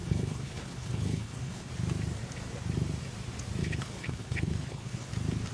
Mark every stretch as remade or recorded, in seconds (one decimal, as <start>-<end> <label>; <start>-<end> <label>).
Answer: 0.0-1.7 remade; 1.7-3.6 recorded; 3.6-5.1 remade; 5.1-5.5 recorded